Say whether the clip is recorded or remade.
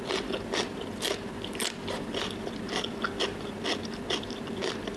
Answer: recorded